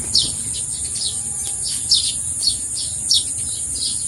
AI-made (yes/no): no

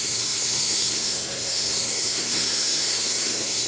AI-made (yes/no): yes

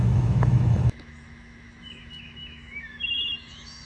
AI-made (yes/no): yes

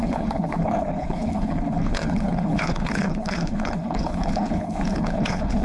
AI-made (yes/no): yes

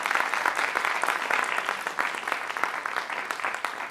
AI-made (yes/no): no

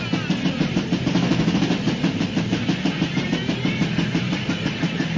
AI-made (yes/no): no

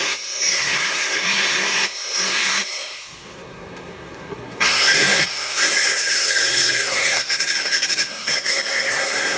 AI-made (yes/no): yes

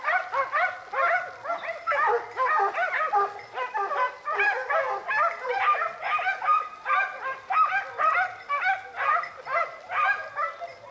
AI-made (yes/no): no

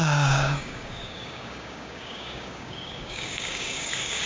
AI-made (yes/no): yes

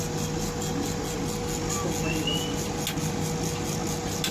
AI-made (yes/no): no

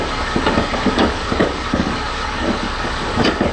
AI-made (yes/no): yes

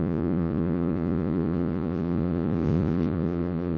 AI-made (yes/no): yes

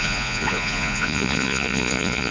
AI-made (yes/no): yes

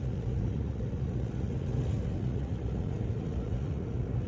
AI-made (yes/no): yes